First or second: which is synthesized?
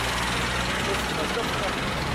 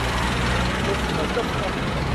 second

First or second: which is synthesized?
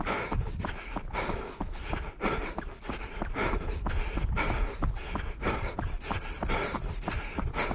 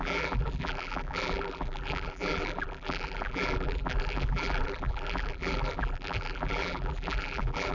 second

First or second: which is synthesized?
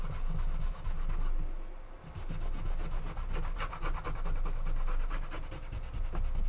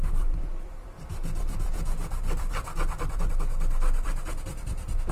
second